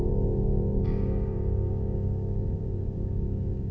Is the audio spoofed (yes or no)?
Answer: yes